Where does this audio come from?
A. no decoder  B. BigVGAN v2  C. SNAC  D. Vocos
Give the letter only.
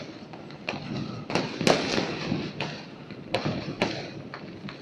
A